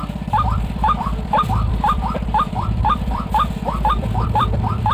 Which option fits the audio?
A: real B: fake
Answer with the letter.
B